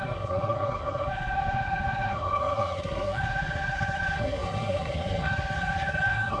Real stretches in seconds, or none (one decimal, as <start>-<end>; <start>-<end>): none